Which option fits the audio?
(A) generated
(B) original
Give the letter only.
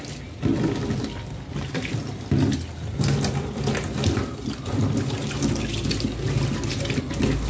B